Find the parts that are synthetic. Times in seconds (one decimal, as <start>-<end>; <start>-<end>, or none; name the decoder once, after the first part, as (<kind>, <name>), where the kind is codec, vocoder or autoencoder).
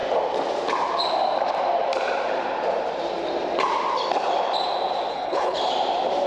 5.1-5.6 (codec, HILCodec)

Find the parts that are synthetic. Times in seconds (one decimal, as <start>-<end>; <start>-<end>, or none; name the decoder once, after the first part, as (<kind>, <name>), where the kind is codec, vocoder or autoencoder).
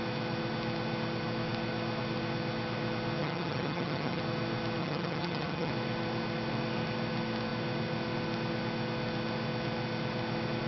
3.2-4.2 (vocoder, HiFi-GAN); 4.8-5.7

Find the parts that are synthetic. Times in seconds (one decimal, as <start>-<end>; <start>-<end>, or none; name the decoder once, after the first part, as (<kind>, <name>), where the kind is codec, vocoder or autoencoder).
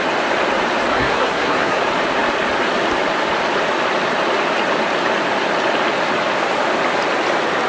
0.9-1.8 (codec, SNAC)